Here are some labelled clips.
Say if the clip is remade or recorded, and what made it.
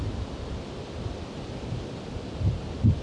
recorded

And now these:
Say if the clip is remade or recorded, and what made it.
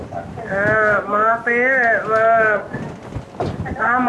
recorded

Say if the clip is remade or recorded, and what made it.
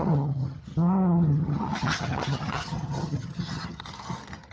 remade, vocoder, HiFi-GAN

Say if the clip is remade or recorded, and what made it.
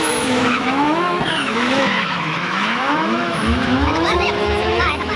remade, autoencoder, DAC-VAE